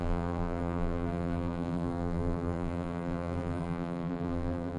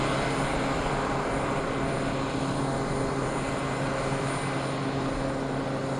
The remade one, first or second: first